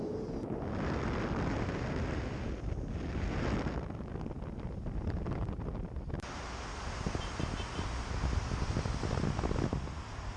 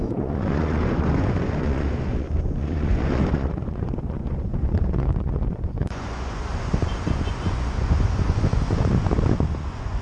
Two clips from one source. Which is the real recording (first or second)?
first